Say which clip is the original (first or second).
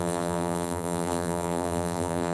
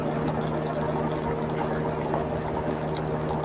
second